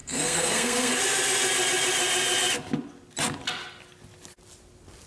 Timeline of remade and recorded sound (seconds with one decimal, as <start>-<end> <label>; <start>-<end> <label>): 0.0-1.0 remade; 1.0-5.1 recorded

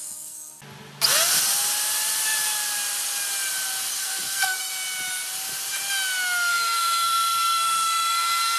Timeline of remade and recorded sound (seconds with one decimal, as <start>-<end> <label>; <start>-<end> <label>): 0.0-0.6 remade; 0.6-3.9 recorded; 3.9-4.7 remade; 4.7-6.5 recorded; 6.5-8.6 remade